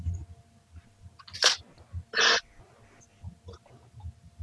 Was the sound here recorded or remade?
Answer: recorded